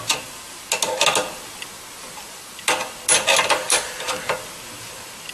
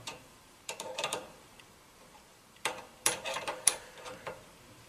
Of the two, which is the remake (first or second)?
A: second